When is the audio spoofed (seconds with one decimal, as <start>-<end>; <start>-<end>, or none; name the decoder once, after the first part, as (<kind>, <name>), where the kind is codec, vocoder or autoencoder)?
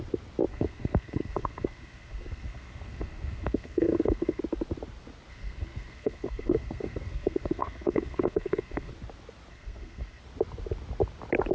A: 0.5-4.4 (codec, SNAC); 5.3-8.9; 9.5-10.2